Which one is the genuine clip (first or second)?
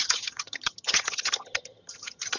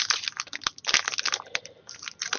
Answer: second